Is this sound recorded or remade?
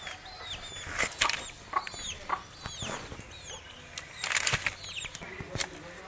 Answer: recorded